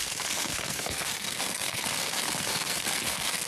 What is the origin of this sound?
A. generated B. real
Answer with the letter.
A